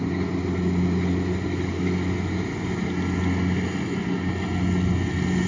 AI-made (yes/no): no